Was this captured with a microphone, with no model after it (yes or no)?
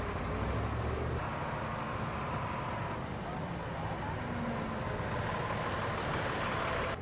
yes